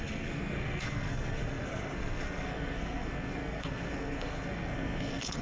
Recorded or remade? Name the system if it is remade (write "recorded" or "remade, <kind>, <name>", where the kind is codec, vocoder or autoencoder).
remade, codec, SNAC